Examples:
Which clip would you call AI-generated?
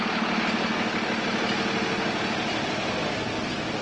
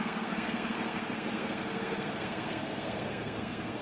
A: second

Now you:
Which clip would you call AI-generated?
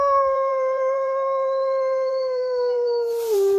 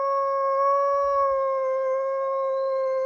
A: first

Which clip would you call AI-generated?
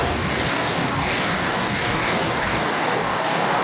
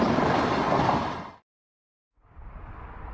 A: first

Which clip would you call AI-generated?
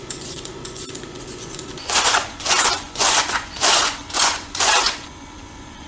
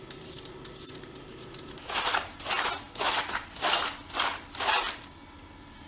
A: first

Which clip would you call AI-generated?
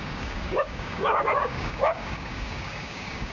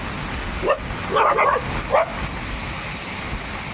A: first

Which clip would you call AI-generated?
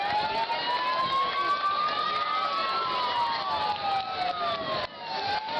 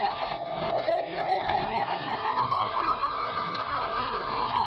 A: second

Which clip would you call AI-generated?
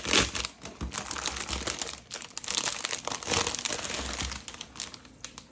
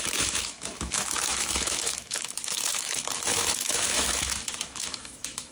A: second